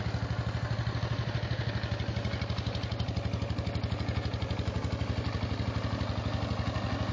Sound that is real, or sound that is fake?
real